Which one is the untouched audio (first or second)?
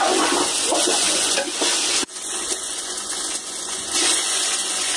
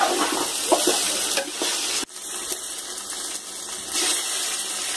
second